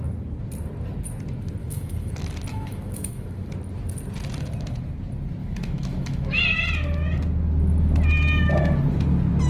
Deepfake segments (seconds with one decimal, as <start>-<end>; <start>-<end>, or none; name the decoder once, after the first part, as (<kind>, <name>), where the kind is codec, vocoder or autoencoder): 1.6-2.1 (autoencoder, DAC-VAE); 2.5-3.5; 5.4-6.4